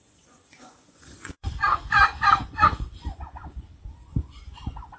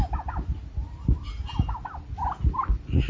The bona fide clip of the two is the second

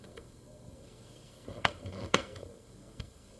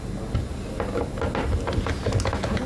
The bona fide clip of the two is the second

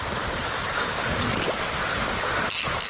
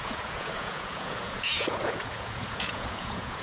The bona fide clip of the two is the first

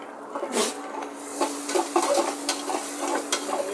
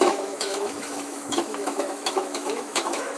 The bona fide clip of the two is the first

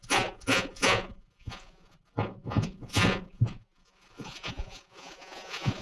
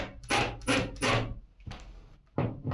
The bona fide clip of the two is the second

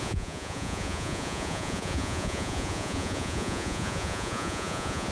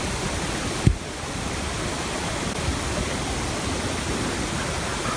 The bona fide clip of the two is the second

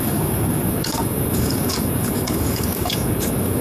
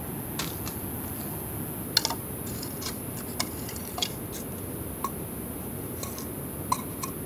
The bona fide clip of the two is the second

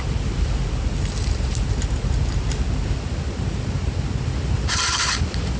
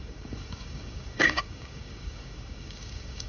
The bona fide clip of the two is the first